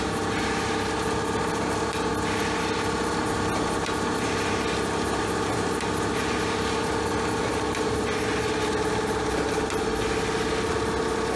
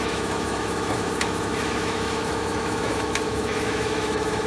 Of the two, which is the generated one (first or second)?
second